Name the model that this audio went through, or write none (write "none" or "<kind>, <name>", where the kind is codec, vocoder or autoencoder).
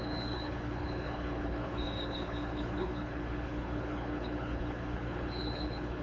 codec, HILCodec